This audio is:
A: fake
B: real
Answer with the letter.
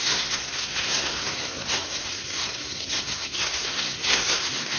A